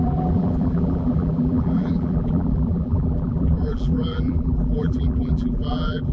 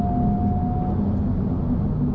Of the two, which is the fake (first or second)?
first